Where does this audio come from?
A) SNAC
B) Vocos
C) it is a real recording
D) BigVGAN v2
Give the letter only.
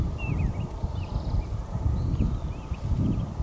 C